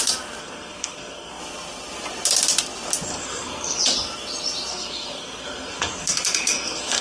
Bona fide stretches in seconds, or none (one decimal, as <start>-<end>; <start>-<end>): 0.0-0.4; 1.4-3.1; 3.8-4.7